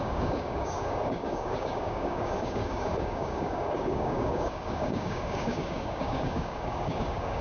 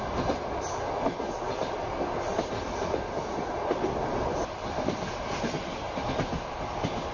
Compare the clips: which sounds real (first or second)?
second